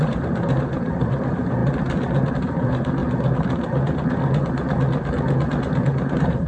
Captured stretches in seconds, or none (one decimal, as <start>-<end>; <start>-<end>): 1.6-2.3; 3.0-5.8

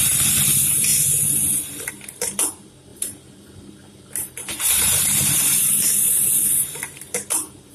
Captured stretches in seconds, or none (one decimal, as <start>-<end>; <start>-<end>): none